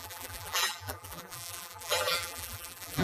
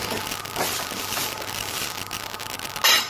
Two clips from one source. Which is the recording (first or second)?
second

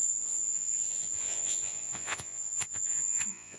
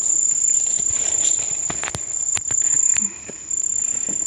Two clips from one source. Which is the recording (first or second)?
second